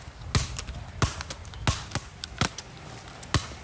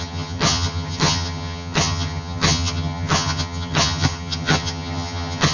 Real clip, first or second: first